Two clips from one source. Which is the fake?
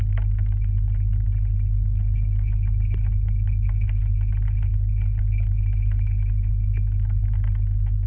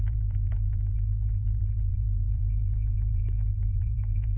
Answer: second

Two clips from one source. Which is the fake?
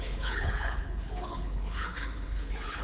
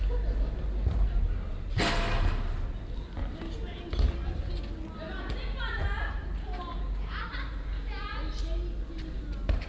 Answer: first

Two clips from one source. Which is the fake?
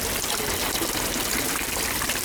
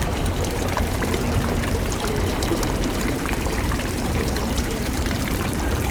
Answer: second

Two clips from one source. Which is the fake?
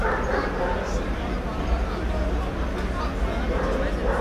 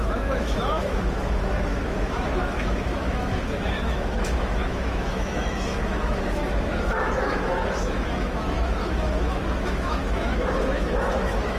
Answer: second